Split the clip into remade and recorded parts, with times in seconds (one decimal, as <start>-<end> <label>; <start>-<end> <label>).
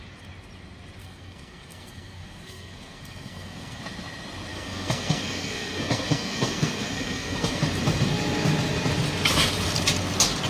0.0-1.0 recorded; 1.0-3.8 remade; 3.8-4.5 recorded; 4.5-7.6 remade; 7.6-10.5 recorded